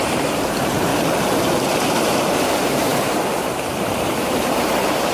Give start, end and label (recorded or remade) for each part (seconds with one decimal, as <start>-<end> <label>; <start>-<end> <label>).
0.0-0.9 remade; 0.9-2.5 recorded; 2.5-5.1 remade